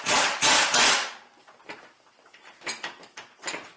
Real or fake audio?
real